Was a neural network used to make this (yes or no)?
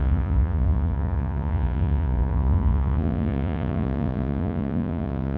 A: yes